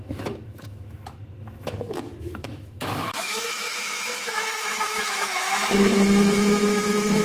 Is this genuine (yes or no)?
no